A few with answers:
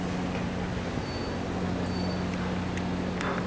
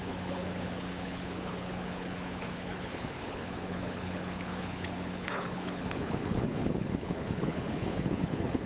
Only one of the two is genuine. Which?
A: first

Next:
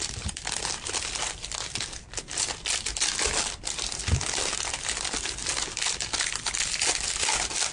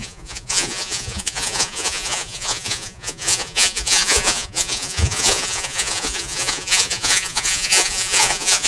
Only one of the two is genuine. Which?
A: first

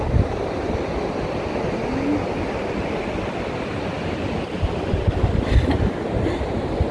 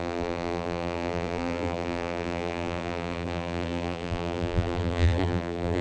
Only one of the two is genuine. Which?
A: first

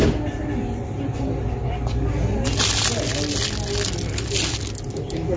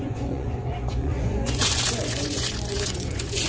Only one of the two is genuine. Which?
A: first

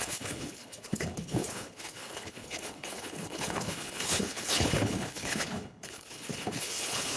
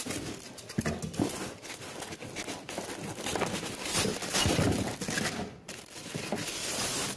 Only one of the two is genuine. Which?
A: second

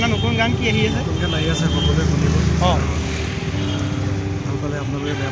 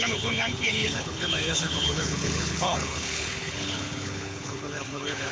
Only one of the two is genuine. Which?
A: first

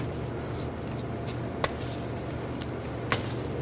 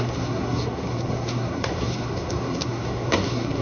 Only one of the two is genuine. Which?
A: first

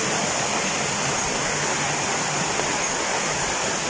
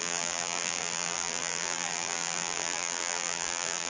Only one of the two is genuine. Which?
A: first